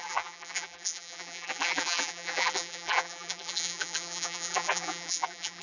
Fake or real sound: fake